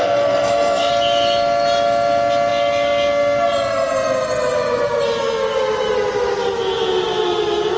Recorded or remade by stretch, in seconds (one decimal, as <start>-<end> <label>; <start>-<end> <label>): 0.0-0.9 remade; 0.9-7.8 recorded